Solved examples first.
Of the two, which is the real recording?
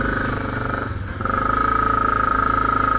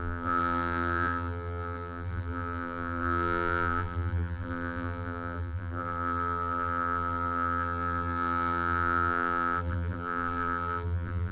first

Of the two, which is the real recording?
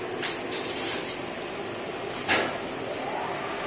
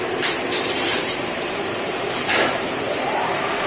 first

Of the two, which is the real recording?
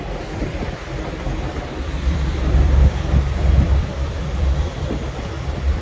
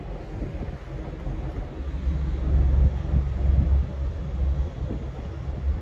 second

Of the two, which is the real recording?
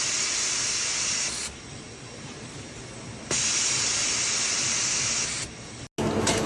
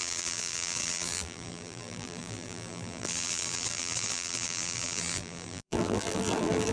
first